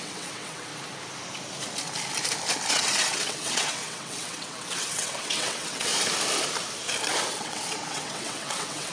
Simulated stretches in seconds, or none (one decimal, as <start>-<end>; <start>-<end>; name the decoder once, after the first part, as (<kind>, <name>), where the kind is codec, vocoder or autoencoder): 0.0-0.7 (vocoder, WaveNeXt); 2.7-5.9; 7.3-8.9